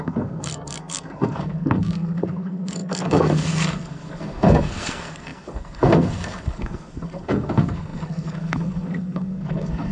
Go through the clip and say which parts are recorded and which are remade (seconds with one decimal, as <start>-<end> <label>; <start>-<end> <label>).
0.0-9.9 remade